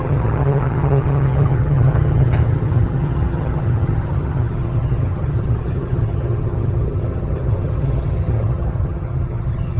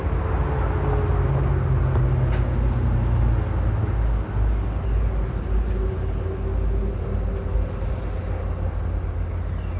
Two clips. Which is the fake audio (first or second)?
first